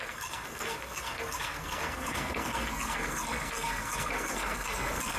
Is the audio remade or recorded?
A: remade